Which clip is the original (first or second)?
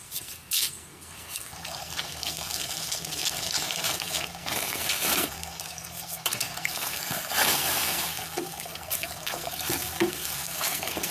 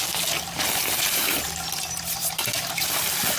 second